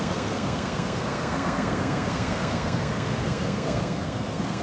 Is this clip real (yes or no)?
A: no